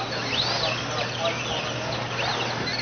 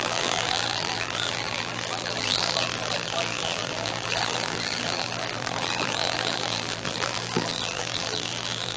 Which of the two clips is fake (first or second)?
second